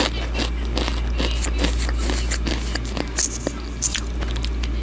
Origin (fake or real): real